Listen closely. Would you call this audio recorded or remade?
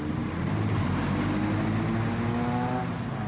recorded